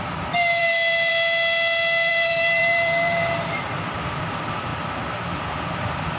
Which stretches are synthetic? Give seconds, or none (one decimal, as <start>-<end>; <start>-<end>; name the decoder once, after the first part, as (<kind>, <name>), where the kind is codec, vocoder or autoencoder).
2.1-4.3 (vocoder, BigVGAN v2)